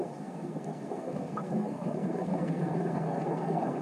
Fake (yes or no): yes